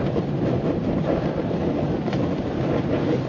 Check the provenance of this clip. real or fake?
real